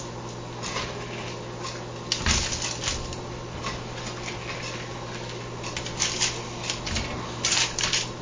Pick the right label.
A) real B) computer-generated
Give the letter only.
A